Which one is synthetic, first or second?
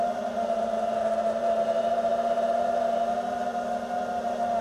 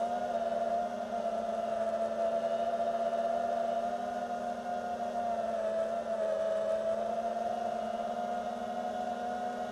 first